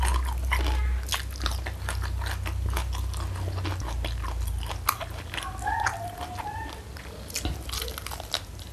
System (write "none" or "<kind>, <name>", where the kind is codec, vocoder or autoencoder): none